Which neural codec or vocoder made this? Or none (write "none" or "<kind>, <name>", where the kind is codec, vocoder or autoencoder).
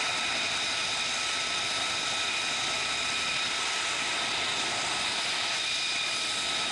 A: none